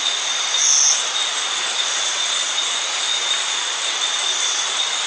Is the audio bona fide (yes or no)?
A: yes